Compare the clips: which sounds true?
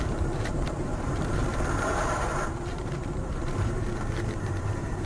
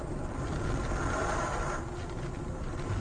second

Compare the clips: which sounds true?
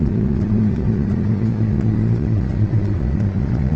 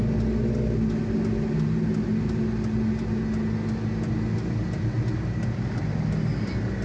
second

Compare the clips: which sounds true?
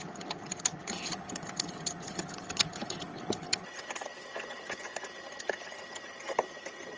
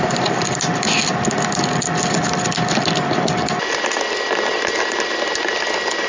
second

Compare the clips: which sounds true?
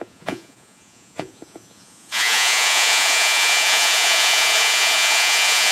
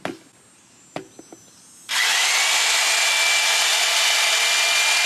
second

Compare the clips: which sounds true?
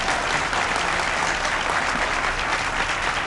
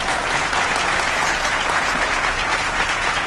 first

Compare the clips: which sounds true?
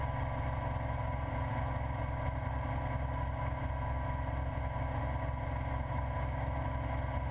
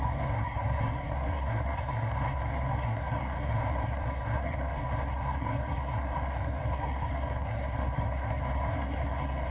first